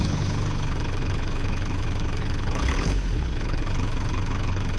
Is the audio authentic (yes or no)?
no